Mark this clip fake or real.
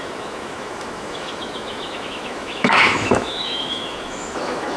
fake